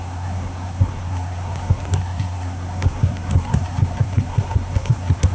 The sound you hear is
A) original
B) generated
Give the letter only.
B